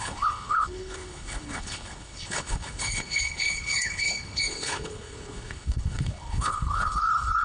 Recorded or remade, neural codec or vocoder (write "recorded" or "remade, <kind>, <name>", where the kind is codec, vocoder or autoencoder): remade, codec, HILCodec